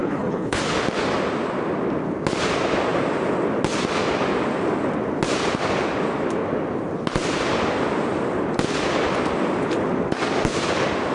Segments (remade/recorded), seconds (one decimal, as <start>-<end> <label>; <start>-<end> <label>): 0.0-0.6 remade; 0.6-11.1 recorded